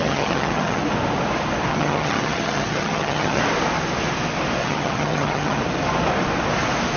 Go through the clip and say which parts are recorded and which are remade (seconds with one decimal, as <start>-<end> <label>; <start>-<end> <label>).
0.0-0.8 remade; 0.8-1.7 recorded; 1.7-3.4 remade; 3.4-4.6 recorded; 4.6-5.6 remade; 5.6-7.0 recorded